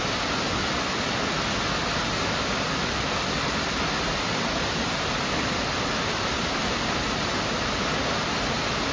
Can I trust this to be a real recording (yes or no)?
yes